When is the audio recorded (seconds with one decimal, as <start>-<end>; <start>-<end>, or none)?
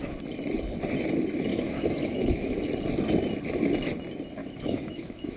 0.0-1.5; 2.6-4.4